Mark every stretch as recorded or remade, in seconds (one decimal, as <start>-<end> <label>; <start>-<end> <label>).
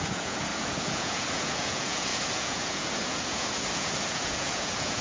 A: 0.0-5.0 remade